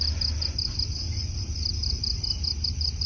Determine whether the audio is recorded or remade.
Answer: recorded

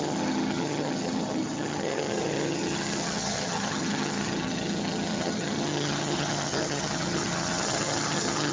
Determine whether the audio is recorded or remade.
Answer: remade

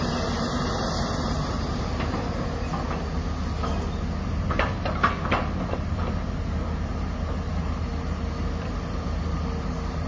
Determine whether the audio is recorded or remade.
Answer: recorded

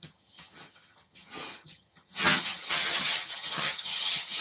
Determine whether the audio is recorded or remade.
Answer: remade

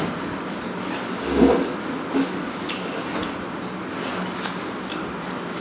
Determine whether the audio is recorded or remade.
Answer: recorded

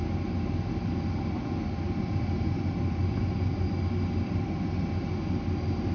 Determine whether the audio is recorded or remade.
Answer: recorded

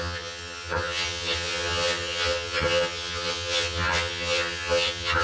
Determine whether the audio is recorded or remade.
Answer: remade